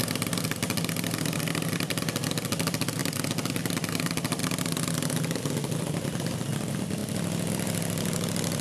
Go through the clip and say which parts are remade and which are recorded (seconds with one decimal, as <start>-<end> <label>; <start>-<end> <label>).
0.0-3.0 remade; 3.0-3.6 recorded; 3.6-4.4 remade; 4.4-5.4 recorded; 5.4-8.6 remade